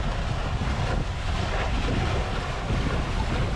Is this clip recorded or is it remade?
recorded